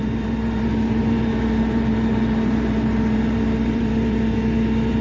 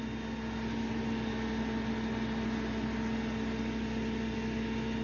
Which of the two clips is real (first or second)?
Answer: second